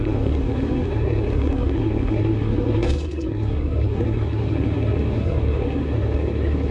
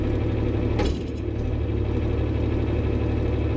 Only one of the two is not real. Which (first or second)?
first